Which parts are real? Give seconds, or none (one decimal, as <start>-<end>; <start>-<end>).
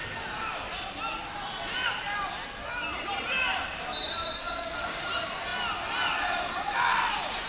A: 0.0-4.4; 5.1-7.5